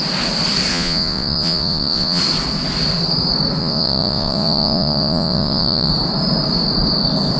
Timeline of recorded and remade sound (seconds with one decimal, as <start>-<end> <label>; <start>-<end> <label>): 0.0-0.7 recorded; 0.7-2.2 remade; 2.2-3.6 recorded; 3.6-5.9 remade; 5.9-7.4 recorded